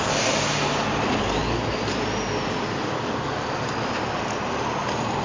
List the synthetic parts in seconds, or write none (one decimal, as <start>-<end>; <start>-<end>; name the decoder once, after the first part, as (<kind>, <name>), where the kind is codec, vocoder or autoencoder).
none